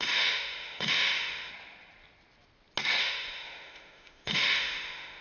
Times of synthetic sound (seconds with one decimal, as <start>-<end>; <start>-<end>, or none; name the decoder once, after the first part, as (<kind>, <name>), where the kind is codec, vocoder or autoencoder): 0.0-1.5 (autoencoder, DAC-VAE); 3.0-5.2